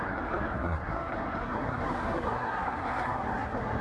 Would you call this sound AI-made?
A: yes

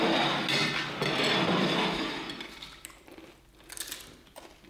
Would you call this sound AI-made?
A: no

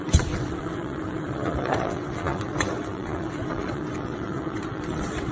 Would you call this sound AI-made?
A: yes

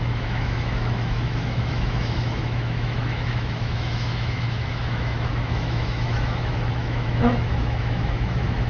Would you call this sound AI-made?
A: yes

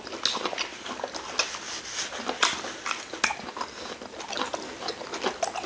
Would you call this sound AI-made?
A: no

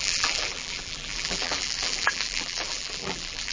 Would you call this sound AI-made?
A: yes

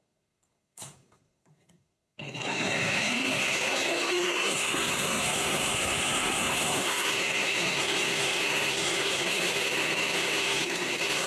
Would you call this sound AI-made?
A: yes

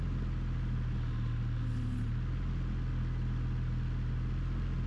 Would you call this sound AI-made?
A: no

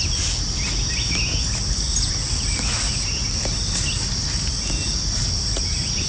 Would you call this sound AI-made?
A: no